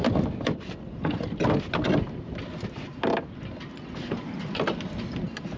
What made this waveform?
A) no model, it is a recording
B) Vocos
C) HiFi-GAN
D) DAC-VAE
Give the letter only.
A